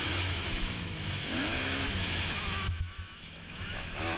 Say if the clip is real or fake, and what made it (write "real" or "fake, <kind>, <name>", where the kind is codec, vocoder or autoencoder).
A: fake, autoencoder, DAC-VAE